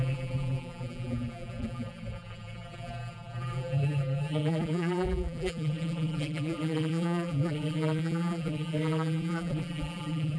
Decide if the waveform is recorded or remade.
remade